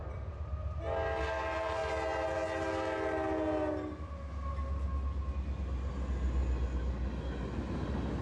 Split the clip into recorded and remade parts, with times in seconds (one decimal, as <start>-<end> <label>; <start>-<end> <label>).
0.0-8.2 recorded